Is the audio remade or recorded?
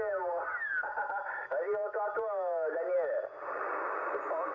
recorded